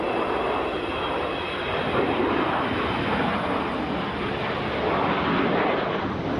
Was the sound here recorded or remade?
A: recorded